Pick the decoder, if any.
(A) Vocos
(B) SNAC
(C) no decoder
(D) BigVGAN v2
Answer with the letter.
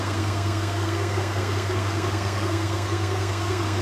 B